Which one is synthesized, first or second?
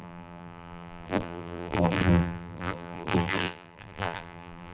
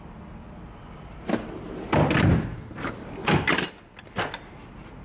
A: first